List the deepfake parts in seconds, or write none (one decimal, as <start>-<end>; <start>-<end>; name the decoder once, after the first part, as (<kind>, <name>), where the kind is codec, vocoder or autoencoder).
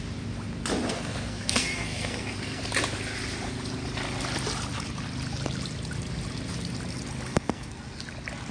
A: 0.9-2.6 (codec, SNAC); 7.3-8.0